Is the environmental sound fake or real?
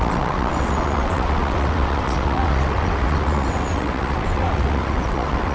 fake